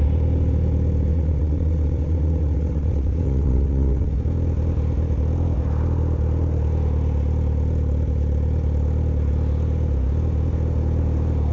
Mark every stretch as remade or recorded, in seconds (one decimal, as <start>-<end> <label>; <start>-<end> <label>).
0.0-1.1 recorded; 1.1-4.1 remade; 4.1-11.5 recorded